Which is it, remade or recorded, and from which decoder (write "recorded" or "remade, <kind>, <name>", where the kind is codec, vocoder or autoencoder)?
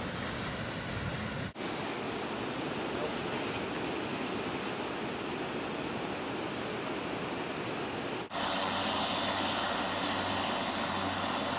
recorded